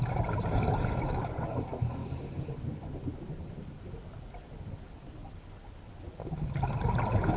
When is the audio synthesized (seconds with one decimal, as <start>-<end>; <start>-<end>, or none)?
none